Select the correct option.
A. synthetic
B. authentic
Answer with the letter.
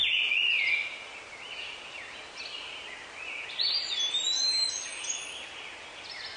B